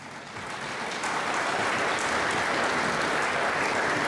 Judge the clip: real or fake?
real